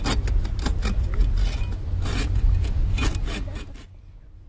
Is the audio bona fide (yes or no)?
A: yes